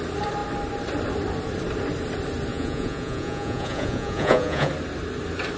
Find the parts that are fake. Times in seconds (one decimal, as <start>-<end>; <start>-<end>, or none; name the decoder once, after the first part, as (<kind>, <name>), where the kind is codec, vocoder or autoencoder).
2.5-4.7 (vocoder, Vocos)